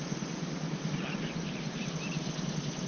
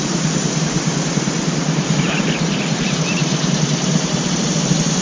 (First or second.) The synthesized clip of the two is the second